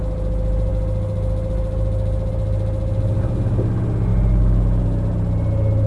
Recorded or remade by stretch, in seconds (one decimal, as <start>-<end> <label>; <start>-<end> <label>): 0.0-5.9 recorded